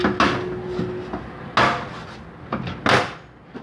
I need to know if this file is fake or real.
real